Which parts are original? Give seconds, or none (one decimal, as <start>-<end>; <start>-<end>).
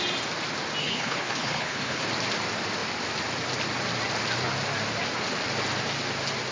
0.0-0.8; 2.0-6.5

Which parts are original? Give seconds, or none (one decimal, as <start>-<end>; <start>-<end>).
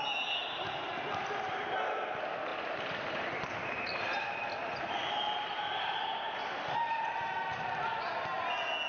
0.0-0.4; 1.2-2.5; 6.4-8.9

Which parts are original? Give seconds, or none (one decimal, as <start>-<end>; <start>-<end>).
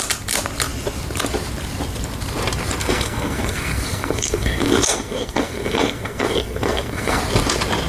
0.0-2.8; 7.2-7.9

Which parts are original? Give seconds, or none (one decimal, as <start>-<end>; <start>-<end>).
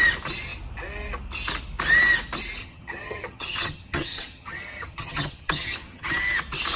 0.0-2.6; 6.1-6.8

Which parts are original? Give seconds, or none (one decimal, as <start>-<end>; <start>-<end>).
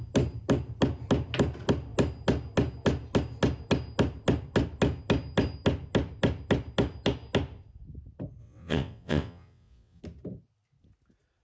0.0-8.4; 10.0-11.4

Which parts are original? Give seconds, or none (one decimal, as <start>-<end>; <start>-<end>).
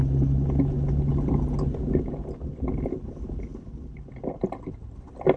0.0-3.5; 4.9-5.4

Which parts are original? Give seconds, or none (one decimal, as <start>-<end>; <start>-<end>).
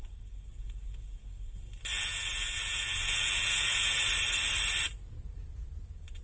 0.0-0.5; 1.2-1.9; 4.0-6.2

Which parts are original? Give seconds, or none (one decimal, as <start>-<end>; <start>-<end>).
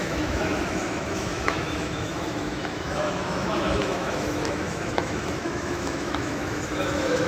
none